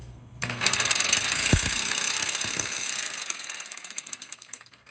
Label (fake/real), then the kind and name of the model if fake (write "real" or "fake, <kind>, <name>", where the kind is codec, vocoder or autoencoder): fake, codec, SNAC